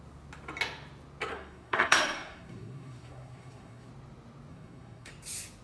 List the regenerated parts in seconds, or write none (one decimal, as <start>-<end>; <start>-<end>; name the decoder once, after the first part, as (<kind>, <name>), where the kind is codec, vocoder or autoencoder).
1.3-3.9 (codec, SNAC); 4.5-5.1